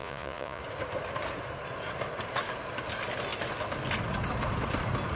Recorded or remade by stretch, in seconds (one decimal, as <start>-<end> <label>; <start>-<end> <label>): 0.0-0.6 remade; 0.6-5.2 recorded